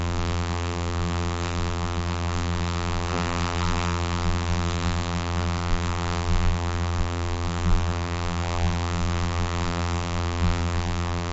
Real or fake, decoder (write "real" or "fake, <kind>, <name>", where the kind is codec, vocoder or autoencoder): fake, vocoder, BigVGAN v2